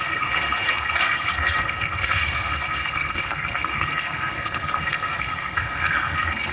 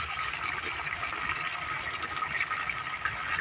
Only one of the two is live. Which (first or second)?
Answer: second